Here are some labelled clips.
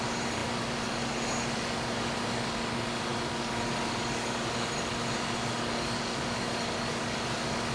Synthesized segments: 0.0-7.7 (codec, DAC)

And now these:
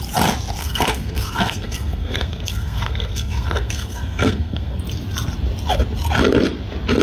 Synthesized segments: 0.6-4.8 (codec, SNAC)

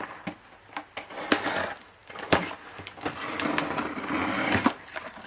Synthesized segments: none

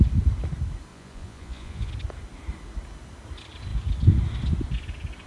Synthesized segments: 0.9-1.9 (vocoder, Vocos)

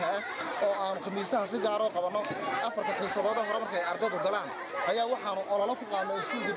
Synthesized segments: none